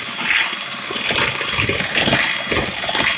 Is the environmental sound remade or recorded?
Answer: recorded